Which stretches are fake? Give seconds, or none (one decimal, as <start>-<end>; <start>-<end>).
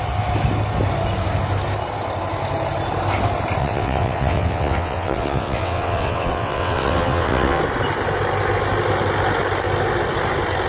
3.6-7.6